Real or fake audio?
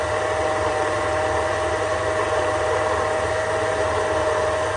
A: real